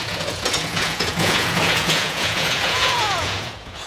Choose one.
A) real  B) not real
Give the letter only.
B